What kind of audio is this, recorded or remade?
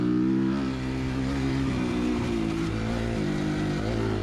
recorded